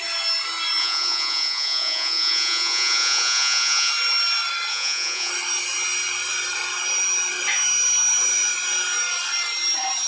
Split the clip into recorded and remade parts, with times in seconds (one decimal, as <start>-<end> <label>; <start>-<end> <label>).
0.0-0.8 recorded; 0.8-3.9 remade; 3.9-4.7 recorded; 4.7-5.3 remade; 5.3-10.1 recorded